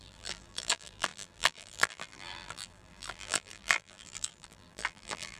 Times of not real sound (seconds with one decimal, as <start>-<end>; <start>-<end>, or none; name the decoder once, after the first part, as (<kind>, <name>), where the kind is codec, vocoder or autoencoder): 0.0-5.4 (vocoder, BigVGAN v2)